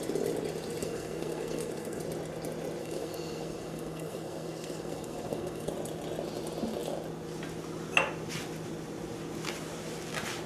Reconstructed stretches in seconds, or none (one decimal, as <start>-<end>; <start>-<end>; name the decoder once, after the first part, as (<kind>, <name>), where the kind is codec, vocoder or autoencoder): 0.8-2.0 (codec, SNAC); 2.8-5.7